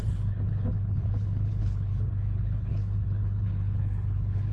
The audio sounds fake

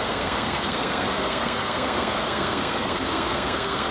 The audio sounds fake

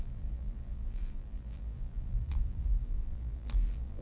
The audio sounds fake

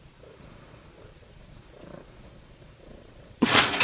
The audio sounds fake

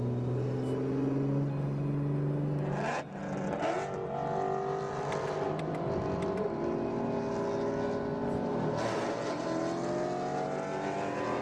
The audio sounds real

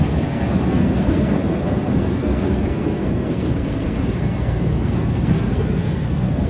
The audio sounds fake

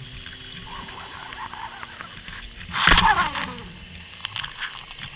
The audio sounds real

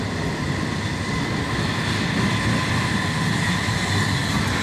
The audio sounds real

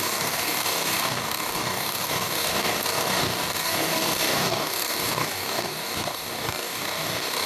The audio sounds fake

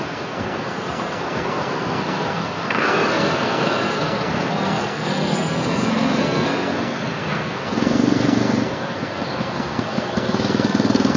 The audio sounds fake